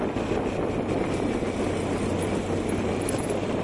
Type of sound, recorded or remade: recorded